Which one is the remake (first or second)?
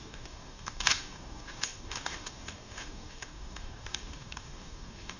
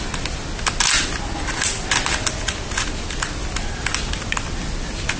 first